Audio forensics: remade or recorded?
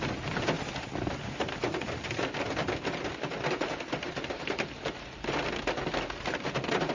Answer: recorded